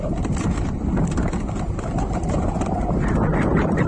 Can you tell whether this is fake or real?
real